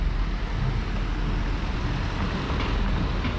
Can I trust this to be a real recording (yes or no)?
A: yes